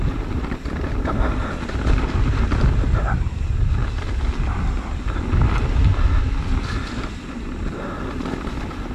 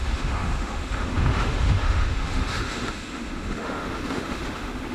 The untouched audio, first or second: first